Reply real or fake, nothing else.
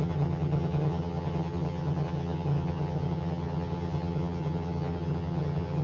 fake